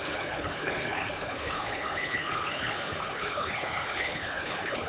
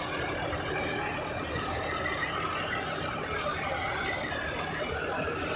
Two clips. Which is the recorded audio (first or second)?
second